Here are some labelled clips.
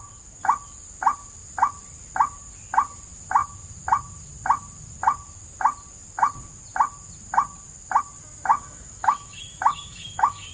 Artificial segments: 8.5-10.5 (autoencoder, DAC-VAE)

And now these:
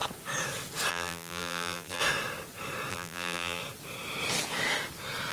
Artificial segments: 0.9-2.0 (vocoder, BigVGAN v2); 2.9-3.6

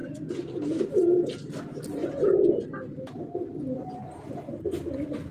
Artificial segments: 2.0-5.3 (vocoder, BigVGAN v2)

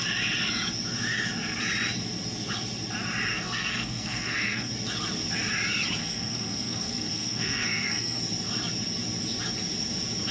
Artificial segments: 3.3-4.7 (codec, SNAC); 6.0-8.2